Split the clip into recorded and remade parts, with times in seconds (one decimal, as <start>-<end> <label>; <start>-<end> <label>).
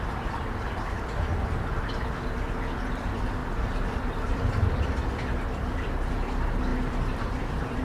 0.0-3.4 recorded; 3.4-4.7 remade; 4.7-6.7 recorded; 6.7-7.8 remade